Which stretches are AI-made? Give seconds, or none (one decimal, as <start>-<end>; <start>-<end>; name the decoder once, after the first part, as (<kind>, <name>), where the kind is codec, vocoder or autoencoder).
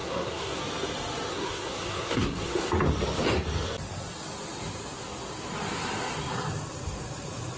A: 0.0-0.6 (codec, SNAC); 1.3-2.7